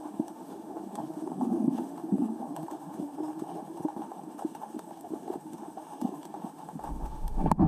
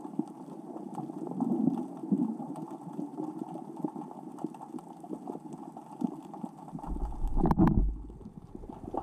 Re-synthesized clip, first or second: first